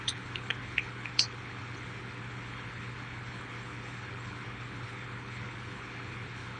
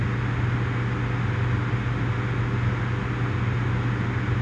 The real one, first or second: second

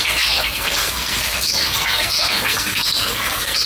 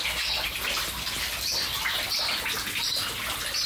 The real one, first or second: second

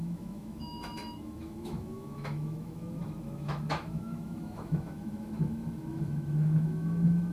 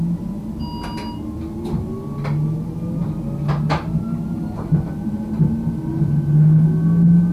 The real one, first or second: second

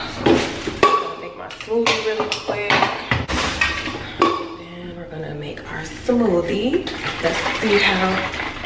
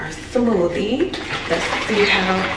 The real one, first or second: first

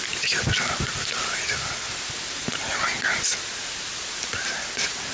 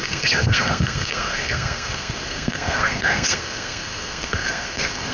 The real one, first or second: first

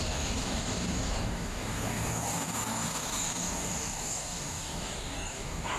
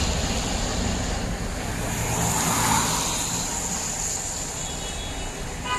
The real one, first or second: second